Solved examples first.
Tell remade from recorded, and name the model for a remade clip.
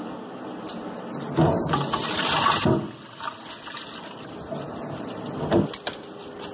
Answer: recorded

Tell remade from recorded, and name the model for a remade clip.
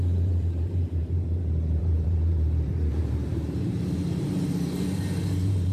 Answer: remade, vocoder, BigVGAN v2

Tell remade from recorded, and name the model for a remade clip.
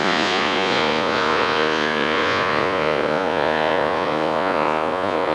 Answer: remade, vocoder, Vocos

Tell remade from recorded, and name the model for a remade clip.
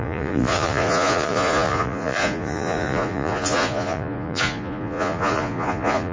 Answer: remade, vocoder, Vocos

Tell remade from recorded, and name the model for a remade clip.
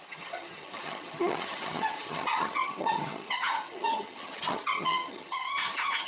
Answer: remade, vocoder, HiFi-GAN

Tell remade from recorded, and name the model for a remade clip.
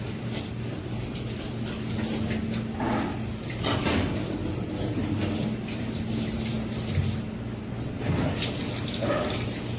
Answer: recorded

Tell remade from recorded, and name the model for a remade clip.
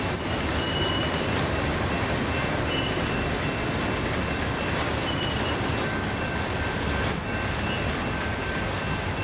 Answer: recorded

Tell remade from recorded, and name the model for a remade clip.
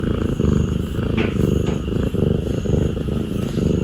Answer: recorded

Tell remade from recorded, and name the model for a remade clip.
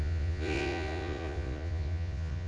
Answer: remade, vocoder, Vocos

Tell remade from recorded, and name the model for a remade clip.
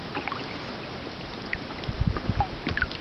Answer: recorded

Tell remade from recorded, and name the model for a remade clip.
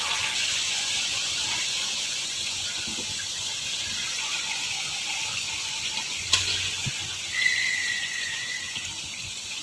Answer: remade, vocoder, Vocos